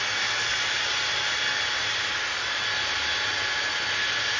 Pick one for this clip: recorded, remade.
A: recorded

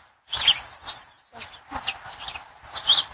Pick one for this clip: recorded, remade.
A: recorded